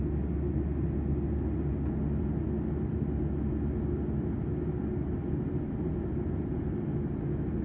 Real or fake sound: real